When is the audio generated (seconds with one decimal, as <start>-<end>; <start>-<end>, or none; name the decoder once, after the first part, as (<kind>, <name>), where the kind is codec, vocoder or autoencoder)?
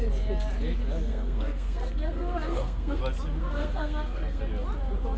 1.1-3.0 (codec, SNAC); 3.4-4.4